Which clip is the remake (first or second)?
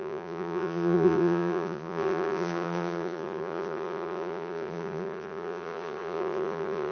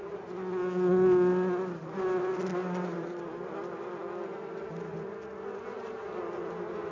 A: first